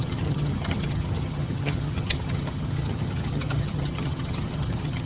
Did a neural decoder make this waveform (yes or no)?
yes